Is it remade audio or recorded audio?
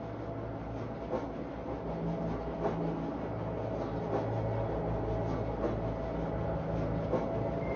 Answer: recorded